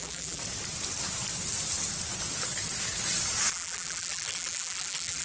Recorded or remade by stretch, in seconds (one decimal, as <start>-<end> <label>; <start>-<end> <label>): 0.0-0.4 remade; 0.4-3.5 recorded; 3.5-5.2 remade